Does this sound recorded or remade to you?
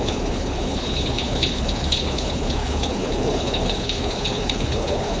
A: remade